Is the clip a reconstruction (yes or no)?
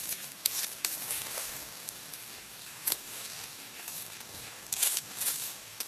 yes